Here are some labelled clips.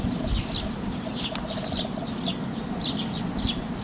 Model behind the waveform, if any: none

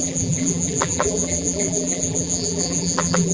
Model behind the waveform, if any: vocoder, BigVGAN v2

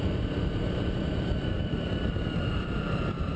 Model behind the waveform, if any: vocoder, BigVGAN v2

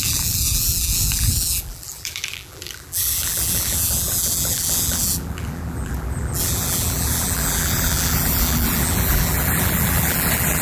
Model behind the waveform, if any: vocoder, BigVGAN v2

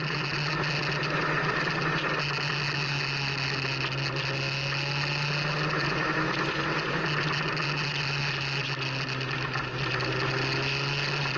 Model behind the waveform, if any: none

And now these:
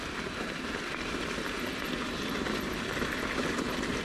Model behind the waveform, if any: none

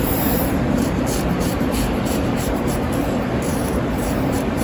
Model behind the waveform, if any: vocoder, BigVGAN v2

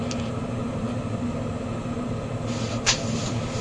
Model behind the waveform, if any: none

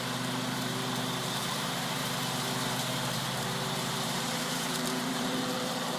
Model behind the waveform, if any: vocoder, BigVGAN v2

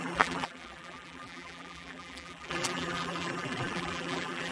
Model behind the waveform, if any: vocoder, BigVGAN v2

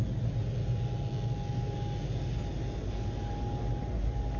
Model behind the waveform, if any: none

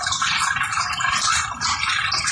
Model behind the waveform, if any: none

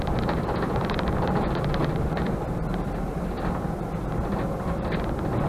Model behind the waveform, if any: vocoder, BigVGAN v2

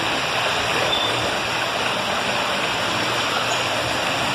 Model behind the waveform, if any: none